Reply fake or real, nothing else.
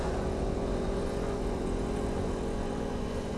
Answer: fake